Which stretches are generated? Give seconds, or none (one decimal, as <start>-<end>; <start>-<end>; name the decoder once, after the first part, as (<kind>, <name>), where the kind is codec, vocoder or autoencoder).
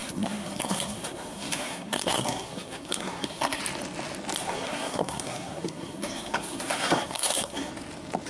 0.0-3.6 (codec, SNAC); 4.4-7.7